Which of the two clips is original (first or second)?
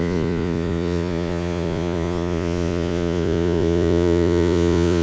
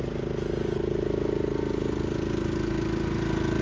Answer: second